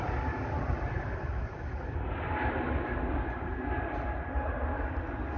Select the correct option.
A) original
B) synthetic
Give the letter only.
A